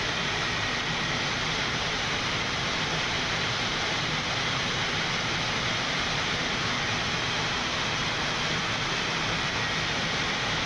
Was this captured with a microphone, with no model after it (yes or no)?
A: no